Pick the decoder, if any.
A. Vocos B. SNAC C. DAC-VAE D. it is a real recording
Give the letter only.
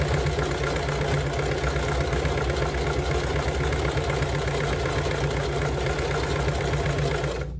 D